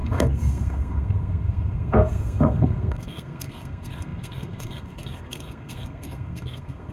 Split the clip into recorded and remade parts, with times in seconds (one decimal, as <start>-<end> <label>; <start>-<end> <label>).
0.0-6.9 remade